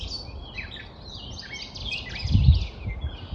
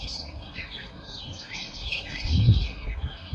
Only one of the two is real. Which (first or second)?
first